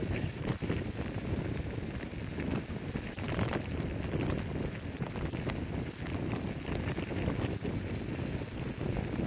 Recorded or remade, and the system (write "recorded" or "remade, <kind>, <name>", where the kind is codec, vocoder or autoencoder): recorded